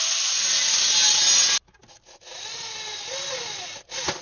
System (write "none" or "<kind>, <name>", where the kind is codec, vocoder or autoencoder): none